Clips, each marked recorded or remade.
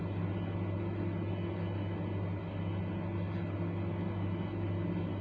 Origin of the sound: recorded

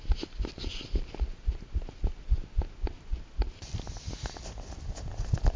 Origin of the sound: recorded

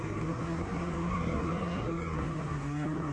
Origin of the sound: remade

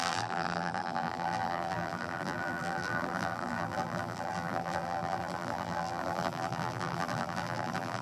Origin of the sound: remade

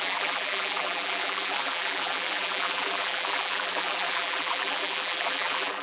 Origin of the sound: remade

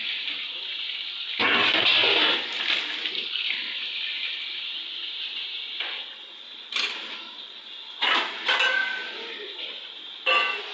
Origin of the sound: recorded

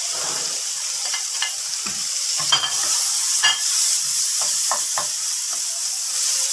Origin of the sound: remade